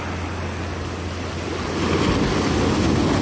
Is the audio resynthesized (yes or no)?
no